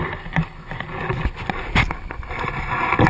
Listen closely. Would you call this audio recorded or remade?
recorded